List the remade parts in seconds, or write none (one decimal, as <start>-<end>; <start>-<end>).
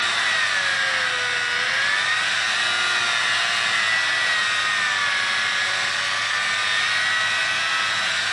none